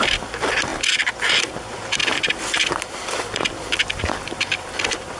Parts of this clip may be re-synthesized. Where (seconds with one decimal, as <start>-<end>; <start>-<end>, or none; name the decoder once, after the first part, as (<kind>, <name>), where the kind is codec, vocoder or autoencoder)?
0.0-5.2 (vocoder, BigVGAN v2)

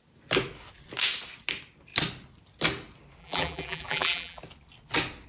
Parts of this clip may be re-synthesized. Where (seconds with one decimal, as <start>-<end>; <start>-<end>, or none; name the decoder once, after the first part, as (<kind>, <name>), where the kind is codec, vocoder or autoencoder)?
3.2-4.4 (vocoder, BigVGAN v2)

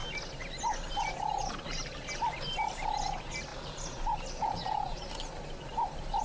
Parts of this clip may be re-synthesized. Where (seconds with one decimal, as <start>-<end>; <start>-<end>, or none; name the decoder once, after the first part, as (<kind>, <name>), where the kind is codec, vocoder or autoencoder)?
none

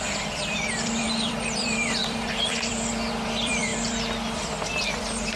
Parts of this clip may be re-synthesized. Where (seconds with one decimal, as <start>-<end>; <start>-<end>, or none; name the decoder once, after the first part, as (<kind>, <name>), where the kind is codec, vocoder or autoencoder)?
0.0-5.4 (vocoder, BigVGAN v2)

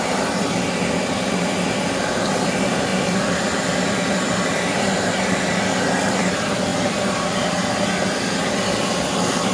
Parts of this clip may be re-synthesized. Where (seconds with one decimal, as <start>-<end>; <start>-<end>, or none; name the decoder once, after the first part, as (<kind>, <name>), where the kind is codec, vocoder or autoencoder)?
6.7-7.7 (vocoder, BigVGAN v2)

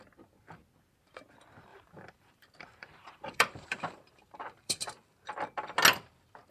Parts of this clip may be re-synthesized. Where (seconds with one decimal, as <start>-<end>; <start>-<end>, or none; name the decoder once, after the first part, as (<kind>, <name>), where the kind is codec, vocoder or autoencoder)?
1.7-5.3 (vocoder, BigVGAN v2)

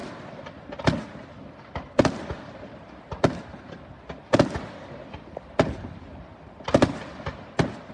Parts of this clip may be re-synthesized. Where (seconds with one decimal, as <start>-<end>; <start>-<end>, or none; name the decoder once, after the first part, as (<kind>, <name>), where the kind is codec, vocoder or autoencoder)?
none